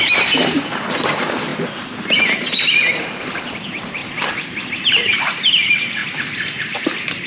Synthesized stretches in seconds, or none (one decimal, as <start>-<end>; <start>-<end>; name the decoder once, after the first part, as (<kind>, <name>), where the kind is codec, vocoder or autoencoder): 0.0-1.5 (vocoder, BigVGAN v2); 3.0-4.0; 4.7-7.3